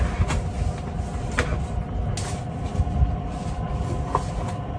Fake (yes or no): no